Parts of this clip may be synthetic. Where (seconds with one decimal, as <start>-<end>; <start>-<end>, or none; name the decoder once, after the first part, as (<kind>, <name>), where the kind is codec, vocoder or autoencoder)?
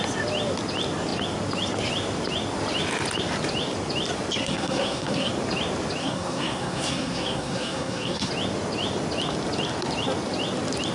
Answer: 4.4-5.3 (codec, SNAC); 6.0-8.3